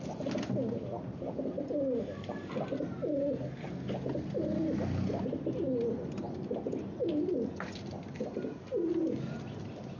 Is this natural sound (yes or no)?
yes